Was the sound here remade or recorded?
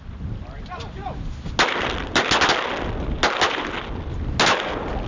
recorded